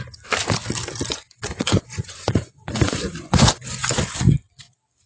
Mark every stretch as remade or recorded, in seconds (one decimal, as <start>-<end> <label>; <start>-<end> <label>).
0.0-1.1 recorded; 1.1-3.8 remade; 3.8-5.1 recorded